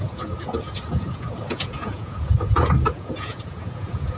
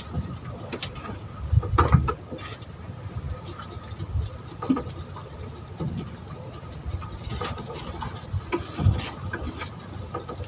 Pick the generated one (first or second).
first